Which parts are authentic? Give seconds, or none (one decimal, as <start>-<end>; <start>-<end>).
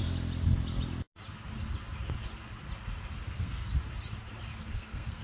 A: 0.0-3.1; 3.7-4.7